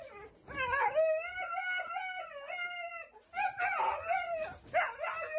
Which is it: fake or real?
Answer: real